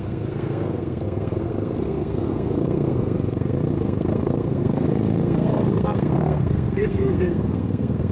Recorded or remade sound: remade